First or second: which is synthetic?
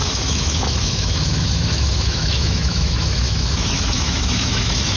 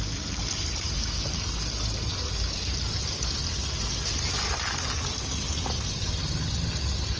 first